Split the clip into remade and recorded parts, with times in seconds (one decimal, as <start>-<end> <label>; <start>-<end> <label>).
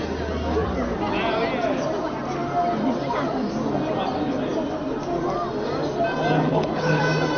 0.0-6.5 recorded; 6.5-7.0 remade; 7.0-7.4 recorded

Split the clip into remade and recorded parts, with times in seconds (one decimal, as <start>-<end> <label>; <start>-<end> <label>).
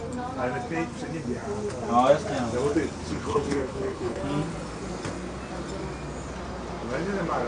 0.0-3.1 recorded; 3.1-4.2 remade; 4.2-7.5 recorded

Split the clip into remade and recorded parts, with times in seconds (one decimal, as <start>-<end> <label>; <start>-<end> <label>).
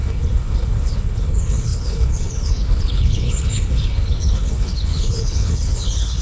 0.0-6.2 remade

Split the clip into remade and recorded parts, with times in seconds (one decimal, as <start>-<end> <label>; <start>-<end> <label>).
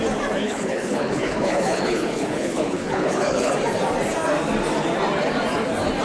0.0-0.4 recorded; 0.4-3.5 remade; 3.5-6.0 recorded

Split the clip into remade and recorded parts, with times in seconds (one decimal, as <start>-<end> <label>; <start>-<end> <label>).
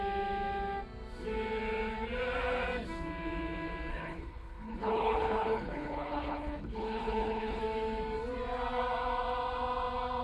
0.0-3.9 recorded; 3.9-7.6 remade; 7.6-10.2 recorded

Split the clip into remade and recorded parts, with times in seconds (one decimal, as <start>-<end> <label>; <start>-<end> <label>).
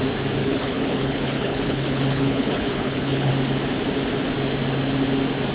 0.0-0.4 recorded; 0.4-3.3 remade; 3.3-5.5 recorded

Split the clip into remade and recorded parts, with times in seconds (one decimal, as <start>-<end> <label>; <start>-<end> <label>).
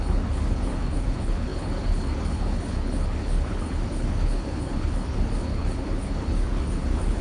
0.0-7.2 remade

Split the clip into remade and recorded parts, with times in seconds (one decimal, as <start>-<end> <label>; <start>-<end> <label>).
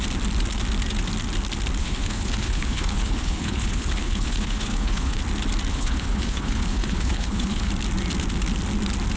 0.0-1.8 recorded; 1.8-5.2 remade; 5.2-5.7 recorded; 5.7-7.7 remade; 7.7-9.2 recorded